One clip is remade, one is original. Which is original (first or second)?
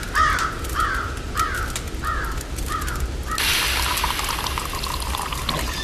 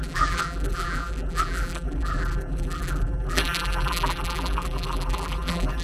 first